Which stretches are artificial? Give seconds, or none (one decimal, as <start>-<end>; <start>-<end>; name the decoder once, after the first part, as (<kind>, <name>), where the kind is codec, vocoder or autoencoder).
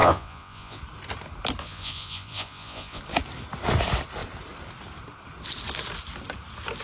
0.0-0.8 (vocoder, Vocos); 1.6-3.0